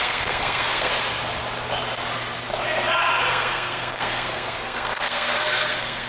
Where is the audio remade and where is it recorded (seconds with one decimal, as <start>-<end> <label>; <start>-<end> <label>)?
0.0-0.9 remade; 0.9-3.3 recorded; 3.3-6.1 remade